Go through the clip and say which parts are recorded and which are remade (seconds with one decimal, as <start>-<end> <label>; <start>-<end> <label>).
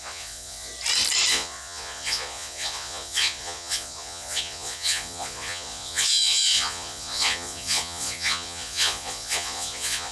0.0-0.7 remade; 0.7-1.3 recorded; 1.3-10.1 remade